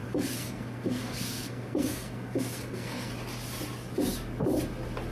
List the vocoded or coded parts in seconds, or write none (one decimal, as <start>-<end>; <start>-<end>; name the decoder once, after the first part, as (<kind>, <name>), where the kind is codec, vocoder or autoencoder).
0.0-3.1 (codec, SNAC)